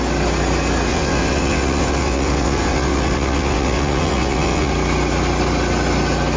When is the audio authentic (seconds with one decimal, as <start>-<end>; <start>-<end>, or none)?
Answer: 0.0-0.9; 4.7-6.4